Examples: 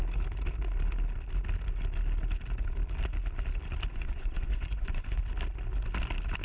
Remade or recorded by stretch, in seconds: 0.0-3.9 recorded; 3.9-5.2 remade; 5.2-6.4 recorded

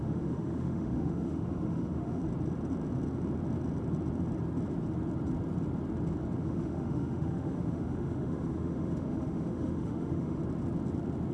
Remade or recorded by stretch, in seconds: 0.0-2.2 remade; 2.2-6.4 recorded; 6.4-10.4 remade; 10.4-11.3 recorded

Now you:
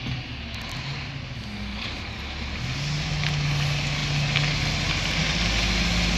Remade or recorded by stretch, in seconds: 0.0-6.2 recorded

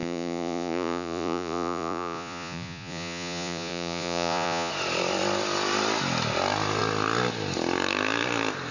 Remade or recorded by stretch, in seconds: 0.0-4.7 remade; 4.7-8.7 recorded

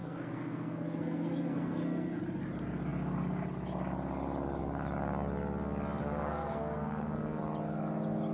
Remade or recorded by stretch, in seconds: 0.0-2.2 remade; 2.2-6.0 recorded; 6.0-7.4 remade; 7.4-8.3 recorded

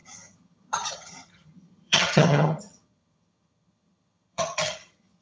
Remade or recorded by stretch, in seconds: 0.0-5.2 remade

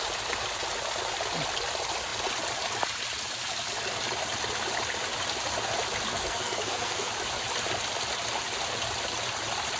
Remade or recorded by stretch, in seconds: 0.0-6.1 recorded; 6.1-7.1 remade; 7.1-9.8 recorded

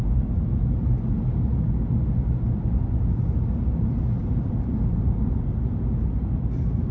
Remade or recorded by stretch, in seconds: 0.0-6.9 recorded